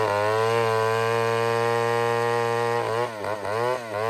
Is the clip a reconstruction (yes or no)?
no